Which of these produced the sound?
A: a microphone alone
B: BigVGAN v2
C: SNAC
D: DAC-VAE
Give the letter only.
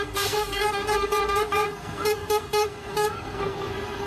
C